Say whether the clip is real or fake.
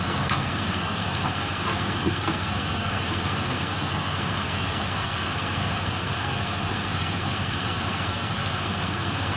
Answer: fake